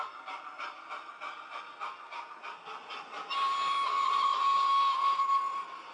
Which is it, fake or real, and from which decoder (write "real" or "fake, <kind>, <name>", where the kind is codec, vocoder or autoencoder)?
real